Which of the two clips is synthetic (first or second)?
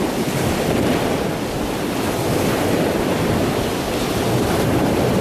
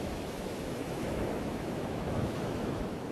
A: second